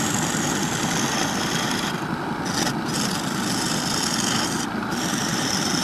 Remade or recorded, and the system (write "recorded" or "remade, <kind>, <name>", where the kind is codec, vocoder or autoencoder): recorded